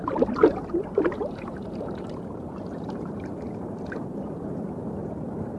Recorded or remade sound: remade